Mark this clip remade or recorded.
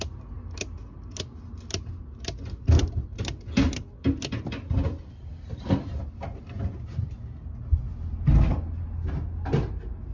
recorded